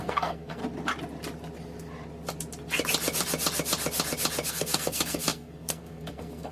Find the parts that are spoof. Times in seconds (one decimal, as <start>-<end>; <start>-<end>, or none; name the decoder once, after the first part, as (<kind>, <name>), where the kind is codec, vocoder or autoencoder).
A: 0.0-0.6 (codec, SNAC); 4.5-6.5